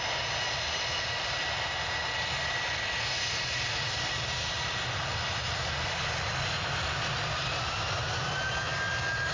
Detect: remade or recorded recorded